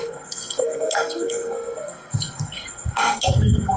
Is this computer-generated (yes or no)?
yes